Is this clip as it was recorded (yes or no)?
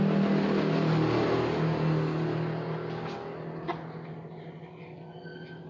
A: yes